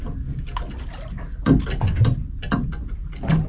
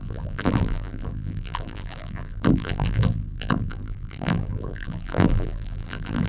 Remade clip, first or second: second